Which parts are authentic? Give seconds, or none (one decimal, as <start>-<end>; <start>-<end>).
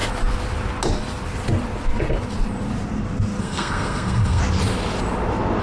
0.0-3.4; 4.4-5.6